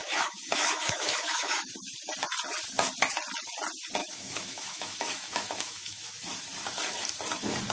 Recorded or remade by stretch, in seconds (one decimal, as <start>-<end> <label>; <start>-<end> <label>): 0.0-1.7 remade; 1.7-4.0 recorded; 4.0-6.1 remade; 6.1-7.7 recorded